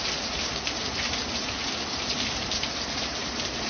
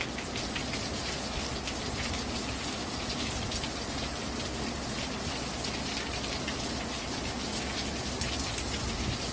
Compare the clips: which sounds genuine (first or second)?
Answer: second